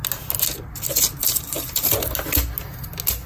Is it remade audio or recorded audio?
recorded